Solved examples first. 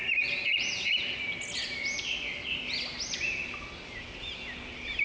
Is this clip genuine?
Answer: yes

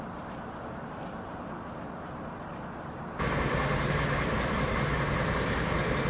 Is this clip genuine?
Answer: yes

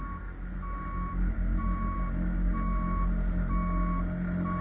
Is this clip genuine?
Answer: yes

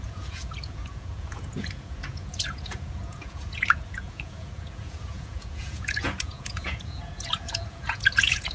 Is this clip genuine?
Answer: no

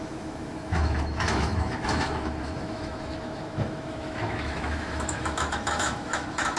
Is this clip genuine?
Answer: no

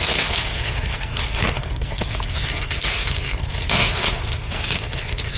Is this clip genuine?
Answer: no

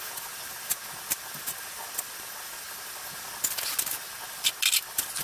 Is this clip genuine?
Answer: yes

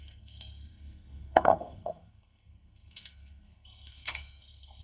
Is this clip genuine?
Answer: no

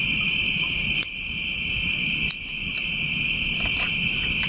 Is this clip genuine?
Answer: yes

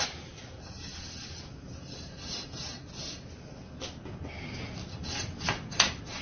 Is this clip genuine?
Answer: yes